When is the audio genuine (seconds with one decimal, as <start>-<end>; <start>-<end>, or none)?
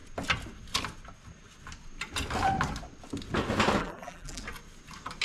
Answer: 0.0-3.8; 4.4-5.2